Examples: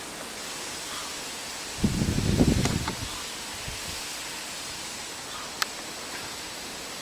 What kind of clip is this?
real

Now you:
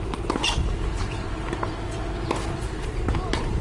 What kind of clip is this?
real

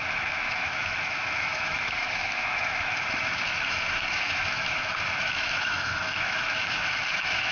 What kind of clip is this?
fake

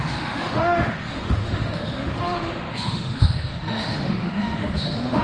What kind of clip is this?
fake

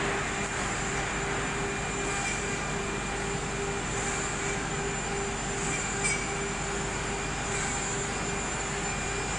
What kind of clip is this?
real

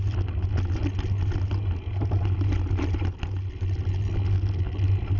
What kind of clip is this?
real